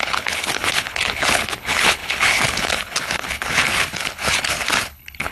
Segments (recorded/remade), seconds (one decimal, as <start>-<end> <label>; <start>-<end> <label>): 0.0-5.3 remade